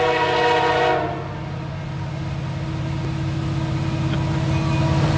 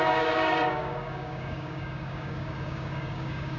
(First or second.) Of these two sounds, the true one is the first